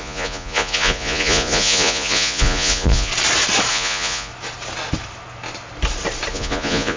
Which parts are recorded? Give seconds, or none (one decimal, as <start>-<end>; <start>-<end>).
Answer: 3.1-3.7; 4.3-6.3